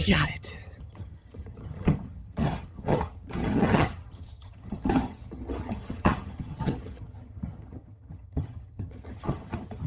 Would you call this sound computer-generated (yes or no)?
yes